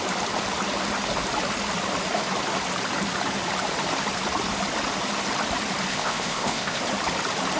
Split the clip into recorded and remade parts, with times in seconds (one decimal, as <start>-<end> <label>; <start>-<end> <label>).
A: 0.0-5.9 recorded; 5.9-6.8 remade; 6.8-7.6 recorded